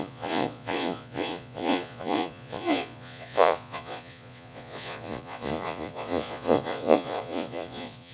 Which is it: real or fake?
fake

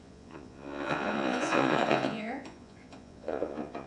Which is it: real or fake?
fake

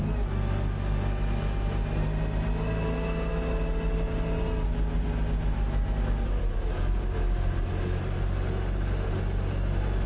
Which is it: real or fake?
real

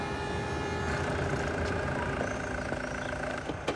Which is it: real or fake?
real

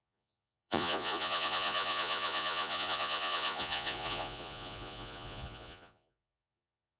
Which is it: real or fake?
fake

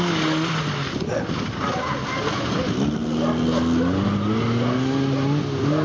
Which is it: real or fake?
real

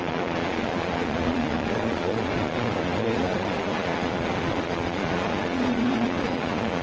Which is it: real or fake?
fake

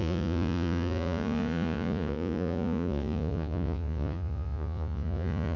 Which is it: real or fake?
fake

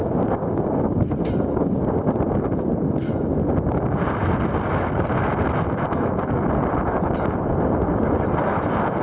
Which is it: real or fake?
real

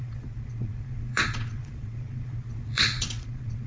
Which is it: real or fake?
fake